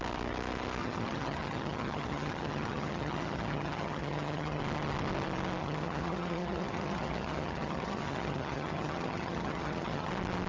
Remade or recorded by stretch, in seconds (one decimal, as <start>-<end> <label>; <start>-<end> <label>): 0.0-0.8 recorded; 0.8-4.6 remade; 4.6-5.6 recorded; 5.6-10.1 remade; 10.1-10.5 recorded